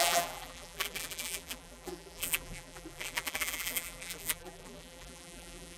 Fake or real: fake